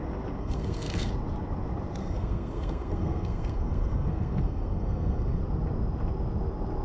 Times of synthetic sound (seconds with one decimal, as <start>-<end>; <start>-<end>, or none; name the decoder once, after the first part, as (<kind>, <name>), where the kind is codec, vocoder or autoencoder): 0.4-1.1 (codec, SNAC); 2.0-5.4